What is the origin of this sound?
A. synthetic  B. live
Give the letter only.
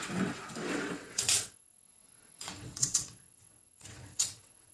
A